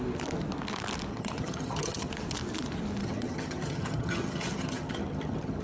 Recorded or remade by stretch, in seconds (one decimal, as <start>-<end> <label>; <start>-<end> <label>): 0.0-1.1 recorded; 1.1-2.1 remade; 2.1-3.0 recorded; 3.0-5.6 remade